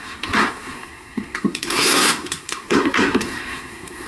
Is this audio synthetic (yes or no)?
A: yes